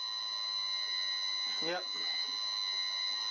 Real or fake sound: real